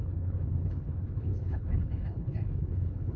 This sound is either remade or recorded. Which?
remade